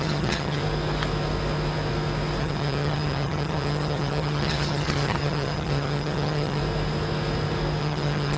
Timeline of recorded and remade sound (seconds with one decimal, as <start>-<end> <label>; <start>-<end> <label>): 0.0-0.6 remade; 0.6-2.4 recorded; 2.4-6.6 remade; 6.6-7.8 recorded; 7.8-8.4 remade